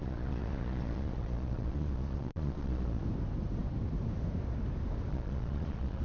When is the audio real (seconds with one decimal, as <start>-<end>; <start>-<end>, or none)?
3.0-5.1